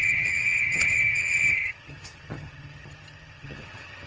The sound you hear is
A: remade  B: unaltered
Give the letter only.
A